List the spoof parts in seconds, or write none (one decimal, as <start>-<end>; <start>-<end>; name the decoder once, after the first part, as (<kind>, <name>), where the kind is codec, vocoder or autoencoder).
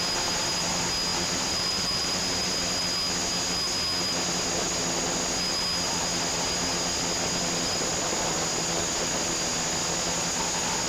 1.1-2.2 (vocoder, BigVGAN v2)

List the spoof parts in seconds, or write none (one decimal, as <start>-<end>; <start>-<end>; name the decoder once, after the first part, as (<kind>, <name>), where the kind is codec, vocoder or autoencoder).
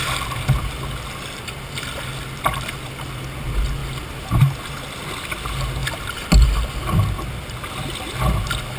none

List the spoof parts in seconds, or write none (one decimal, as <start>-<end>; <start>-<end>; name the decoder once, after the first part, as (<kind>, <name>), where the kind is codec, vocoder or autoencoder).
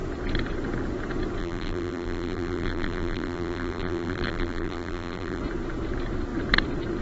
1.4-5.4 (vocoder, BigVGAN v2)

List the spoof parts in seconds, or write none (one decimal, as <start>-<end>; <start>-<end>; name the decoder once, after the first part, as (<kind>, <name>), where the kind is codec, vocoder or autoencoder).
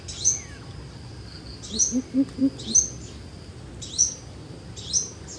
none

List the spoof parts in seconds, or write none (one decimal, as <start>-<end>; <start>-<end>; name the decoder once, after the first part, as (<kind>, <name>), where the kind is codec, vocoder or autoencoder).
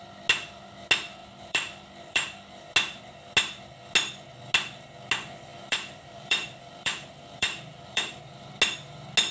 1.2-2.7 (vocoder, BigVGAN v2); 5.5-8.2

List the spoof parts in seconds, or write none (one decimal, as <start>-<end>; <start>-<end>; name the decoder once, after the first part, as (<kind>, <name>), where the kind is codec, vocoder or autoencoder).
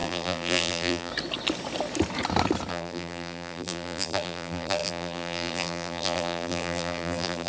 0.0-1.1 (vocoder, BigVGAN v2); 2.7-7.5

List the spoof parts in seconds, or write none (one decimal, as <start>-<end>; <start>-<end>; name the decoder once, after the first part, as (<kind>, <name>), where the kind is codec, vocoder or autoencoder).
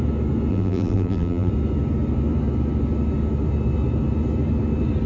0.5-1.5 (vocoder, BigVGAN v2)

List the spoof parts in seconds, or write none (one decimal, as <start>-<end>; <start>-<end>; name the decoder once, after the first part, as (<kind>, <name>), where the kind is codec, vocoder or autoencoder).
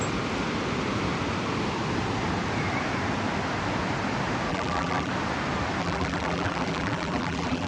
4.5-5.1 (vocoder, BigVGAN v2); 5.8-7.7